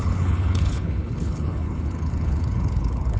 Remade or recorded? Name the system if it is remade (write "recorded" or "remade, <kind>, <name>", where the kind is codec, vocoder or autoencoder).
remade, codec, HILCodec